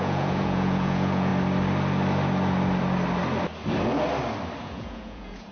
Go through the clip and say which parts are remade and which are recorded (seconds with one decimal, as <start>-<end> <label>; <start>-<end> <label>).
0.0-1.3 remade; 1.3-4.6 recorded; 4.6-5.5 remade